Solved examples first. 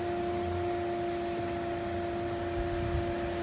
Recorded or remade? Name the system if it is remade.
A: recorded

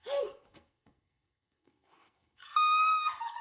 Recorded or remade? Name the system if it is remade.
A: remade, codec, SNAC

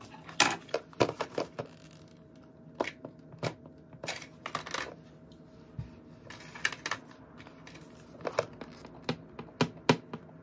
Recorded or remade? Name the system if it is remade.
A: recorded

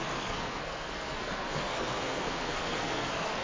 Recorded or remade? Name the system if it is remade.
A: remade, codec, SNAC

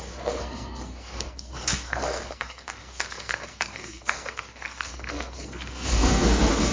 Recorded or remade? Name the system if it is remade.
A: remade, codec, SNAC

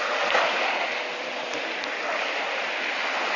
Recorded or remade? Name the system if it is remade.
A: recorded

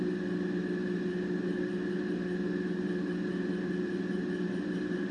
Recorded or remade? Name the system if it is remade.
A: recorded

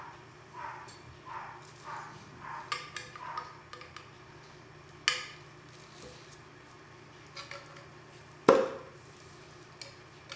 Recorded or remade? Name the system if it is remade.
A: recorded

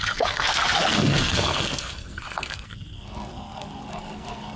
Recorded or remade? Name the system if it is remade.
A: remade, codec, SNAC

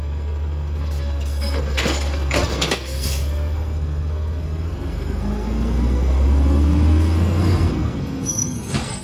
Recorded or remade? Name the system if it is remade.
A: remade, codec, SNAC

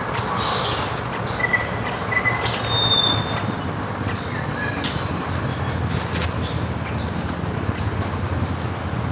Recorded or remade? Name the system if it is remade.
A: recorded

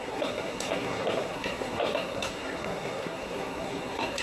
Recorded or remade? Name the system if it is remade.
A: remade, codec, SNAC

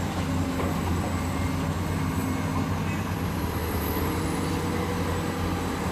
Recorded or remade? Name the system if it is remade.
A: recorded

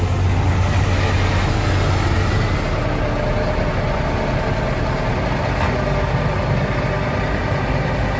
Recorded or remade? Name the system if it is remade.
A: recorded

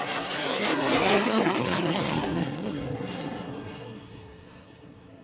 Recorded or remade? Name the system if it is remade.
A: remade, codec, SNAC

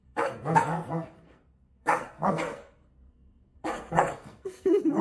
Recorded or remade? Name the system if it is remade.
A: remade, codec, SNAC